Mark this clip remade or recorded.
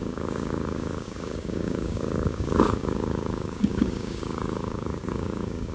remade